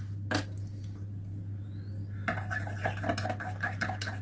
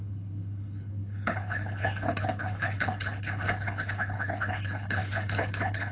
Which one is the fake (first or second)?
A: second